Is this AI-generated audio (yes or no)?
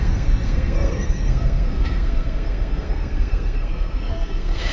yes